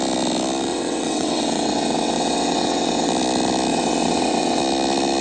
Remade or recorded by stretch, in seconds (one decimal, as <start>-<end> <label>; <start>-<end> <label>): 0.0-0.7 recorded; 0.7-3.1 remade; 3.1-3.7 recorded; 3.7-4.6 remade; 4.6-5.2 recorded